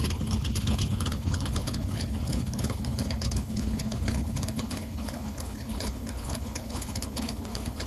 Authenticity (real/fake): fake